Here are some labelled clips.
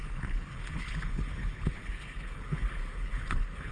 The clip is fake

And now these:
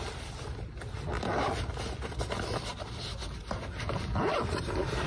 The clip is real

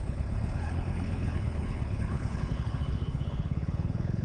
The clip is fake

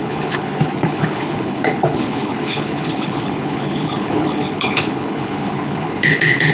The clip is fake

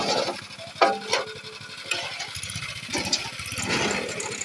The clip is real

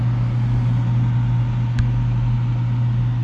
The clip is real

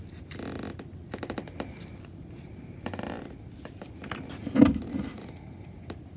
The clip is real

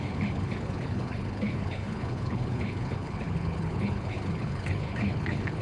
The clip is fake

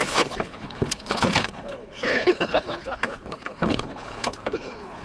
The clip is fake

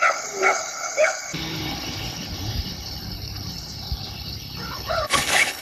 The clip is fake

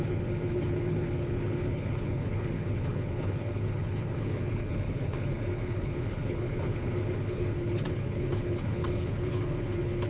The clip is fake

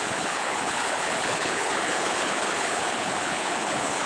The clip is fake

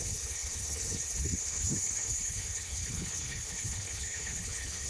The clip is fake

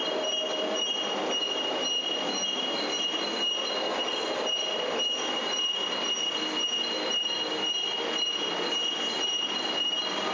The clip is real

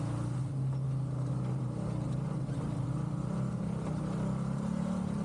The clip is real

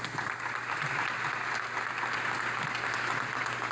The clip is real